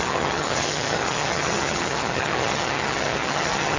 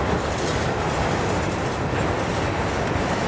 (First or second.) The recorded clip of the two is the second